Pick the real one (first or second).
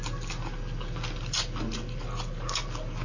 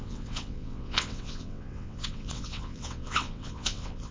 first